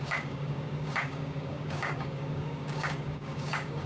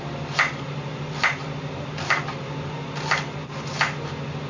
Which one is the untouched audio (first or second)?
second